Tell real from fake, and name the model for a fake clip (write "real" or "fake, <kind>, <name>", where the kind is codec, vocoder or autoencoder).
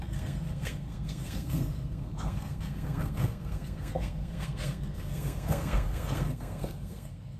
fake, codec, SNAC